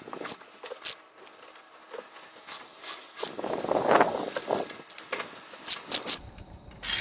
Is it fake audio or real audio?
real